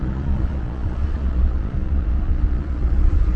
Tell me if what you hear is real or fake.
fake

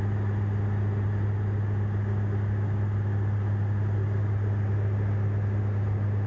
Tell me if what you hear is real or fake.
real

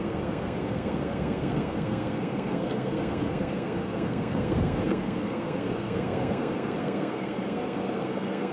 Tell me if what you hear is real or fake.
fake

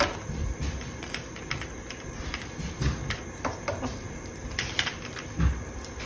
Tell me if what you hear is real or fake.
real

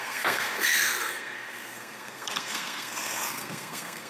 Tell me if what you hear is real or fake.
fake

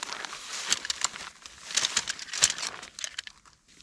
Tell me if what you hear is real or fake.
real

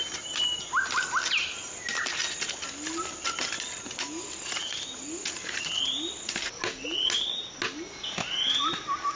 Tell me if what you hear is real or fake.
real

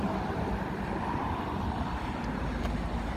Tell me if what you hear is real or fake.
real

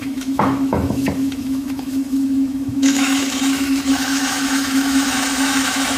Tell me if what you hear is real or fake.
fake